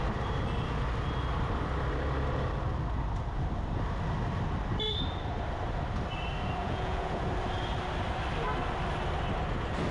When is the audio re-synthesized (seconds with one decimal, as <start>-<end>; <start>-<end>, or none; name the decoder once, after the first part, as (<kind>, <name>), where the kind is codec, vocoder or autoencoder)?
6.6-7.2 (vocoder, Vocos)